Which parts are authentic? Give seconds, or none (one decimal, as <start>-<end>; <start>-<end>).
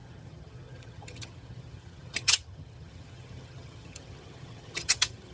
none